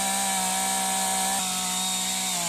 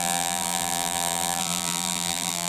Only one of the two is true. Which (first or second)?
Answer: first